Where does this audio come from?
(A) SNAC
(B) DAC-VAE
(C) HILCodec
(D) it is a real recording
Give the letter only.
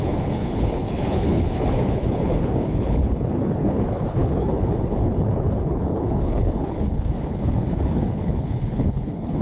C